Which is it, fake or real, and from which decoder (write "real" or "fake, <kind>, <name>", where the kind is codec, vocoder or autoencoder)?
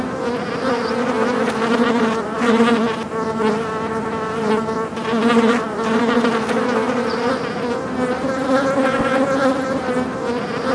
real